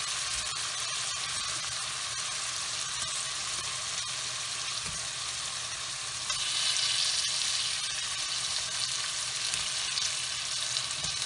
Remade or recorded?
recorded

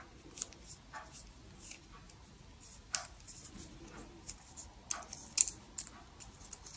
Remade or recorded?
recorded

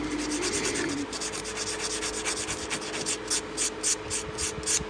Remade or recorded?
recorded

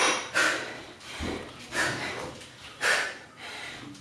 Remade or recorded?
recorded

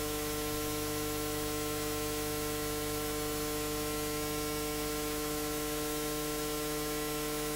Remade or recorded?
remade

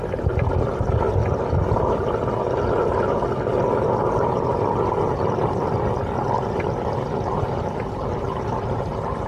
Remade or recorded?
recorded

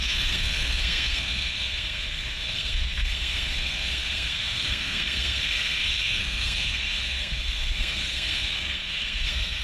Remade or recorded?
remade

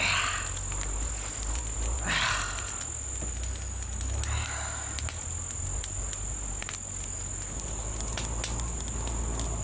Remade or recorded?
recorded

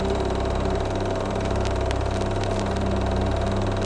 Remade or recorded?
remade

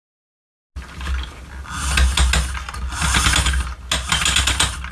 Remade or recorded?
recorded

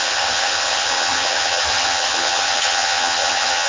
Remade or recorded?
remade